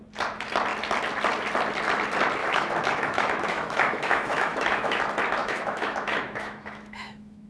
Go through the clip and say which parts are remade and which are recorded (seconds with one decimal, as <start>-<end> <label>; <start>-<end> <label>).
0.0-2.4 recorded; 2.4-5.0 remade; 5.0-5.4 recorded; 5.4-7.5 remade